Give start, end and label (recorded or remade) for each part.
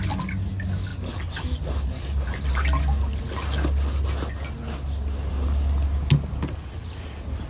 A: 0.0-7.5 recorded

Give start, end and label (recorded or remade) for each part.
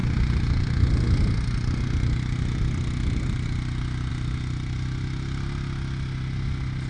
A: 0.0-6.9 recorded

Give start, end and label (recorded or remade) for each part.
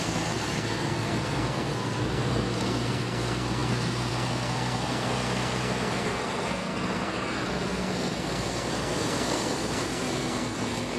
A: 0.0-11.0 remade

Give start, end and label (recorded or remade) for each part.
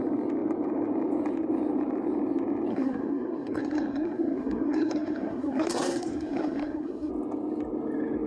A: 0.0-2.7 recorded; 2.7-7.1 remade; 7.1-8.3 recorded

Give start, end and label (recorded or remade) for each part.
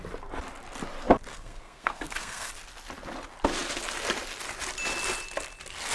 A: 0.0-1.3 recorded; 1.3-2.5 remade; 2.5-5.9 recorded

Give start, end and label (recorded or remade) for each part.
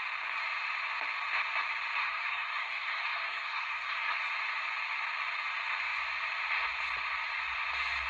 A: 0.0-2.0 recorded; 2.0-4.2 remade; 4.2-8.1 recorded